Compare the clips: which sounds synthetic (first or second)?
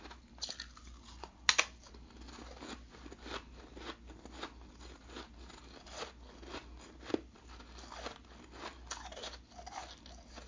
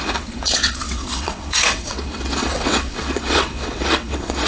second